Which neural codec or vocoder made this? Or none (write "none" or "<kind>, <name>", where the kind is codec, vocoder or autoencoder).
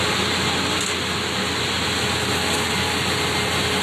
none